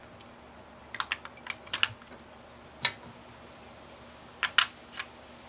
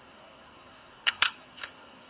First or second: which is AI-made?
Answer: second